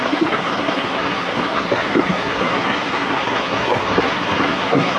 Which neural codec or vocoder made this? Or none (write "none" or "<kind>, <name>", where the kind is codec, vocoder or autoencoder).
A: codec, SNAC